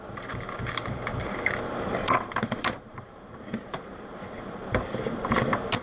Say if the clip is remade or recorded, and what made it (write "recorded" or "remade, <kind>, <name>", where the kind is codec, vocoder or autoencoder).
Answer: remade, vocoder, BigVGAN v2